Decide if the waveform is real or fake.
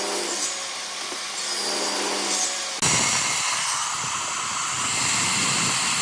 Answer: real